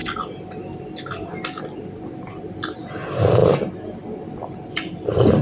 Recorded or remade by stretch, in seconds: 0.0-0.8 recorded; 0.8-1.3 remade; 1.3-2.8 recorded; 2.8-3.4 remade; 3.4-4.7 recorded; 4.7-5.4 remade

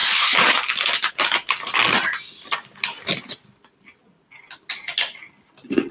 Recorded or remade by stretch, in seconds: 0.0-5.9 recorded

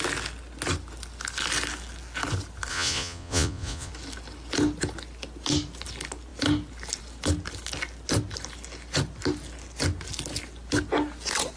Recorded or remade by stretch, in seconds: 0.0-2.7 recorded; 2.7-3.9 remade; 3.9-11.6 recorded

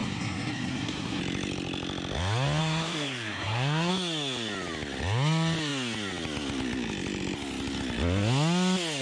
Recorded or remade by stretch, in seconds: 0.0-1.2 remade; 1.2-2.6 recorded; 2.6-3.9 remade; 3.9-9.0 recorded